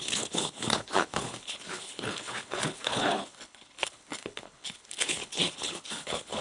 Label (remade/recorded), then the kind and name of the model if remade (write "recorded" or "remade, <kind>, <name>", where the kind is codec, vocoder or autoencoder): remade, codec, HILCodec